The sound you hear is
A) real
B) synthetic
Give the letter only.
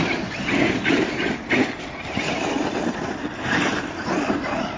A